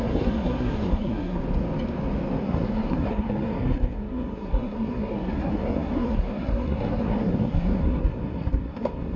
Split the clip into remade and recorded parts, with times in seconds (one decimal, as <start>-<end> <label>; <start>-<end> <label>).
0.0-1.4 remade; 1.4-2.4 recorded; 2.4-9.2 remade